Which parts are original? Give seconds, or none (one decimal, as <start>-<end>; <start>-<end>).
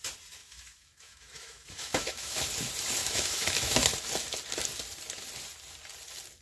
0.0-0.4; 2.4-3.0; 3.9-6.4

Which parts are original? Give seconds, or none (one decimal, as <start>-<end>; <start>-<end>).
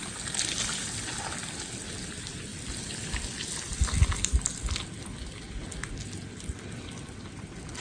0.0-7.8